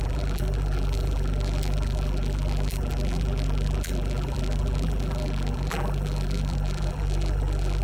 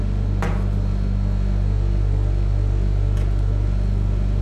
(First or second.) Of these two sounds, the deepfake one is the first